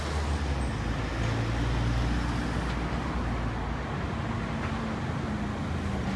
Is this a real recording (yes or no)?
yes